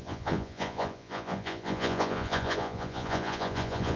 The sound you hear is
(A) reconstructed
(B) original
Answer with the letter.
A